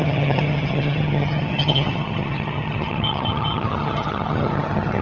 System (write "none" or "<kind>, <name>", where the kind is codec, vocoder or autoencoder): vocoder, HiFi-GAN